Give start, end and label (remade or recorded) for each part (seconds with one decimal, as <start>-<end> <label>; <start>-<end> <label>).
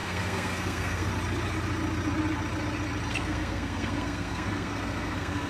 0.0-1.1 remade; 1.1-3.1 recorded; 3.1-5.5 remade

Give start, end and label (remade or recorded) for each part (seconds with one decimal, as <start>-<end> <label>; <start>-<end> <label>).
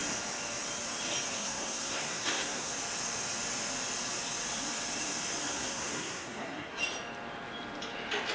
0.0-1.3 recorded; 1.3-2.7 remade; 2.7-5.5 recorded; 5.5-6.8 remade; 6.8-8.3 recorded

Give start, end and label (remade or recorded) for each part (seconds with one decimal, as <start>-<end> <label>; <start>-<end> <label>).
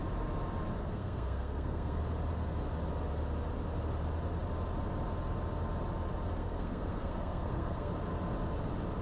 0.0-0.8 recorded; 0.8-2.0 remade; 2.0-6.4 recorded; 6.4-7.9 remade; 7.9-9.0 recorded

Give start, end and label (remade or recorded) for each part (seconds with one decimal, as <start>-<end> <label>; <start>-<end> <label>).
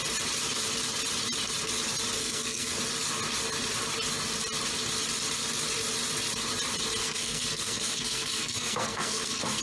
0.0-2.2 recorded; 2.2-2.8 remade; 2.8-7.0 recorded; 7.0-9.6 remade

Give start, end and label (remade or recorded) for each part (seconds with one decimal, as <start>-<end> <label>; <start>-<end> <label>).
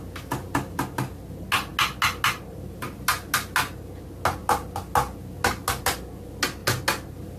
0.0-7.4 recorded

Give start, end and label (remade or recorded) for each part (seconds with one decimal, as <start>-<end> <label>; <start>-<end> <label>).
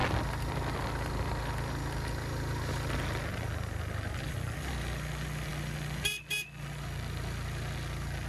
0.0-8.3 recorded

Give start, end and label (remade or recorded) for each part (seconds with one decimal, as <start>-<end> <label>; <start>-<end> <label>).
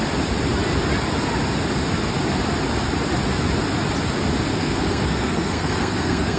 0.0-4.5 recorded; 4.5-6.4 remade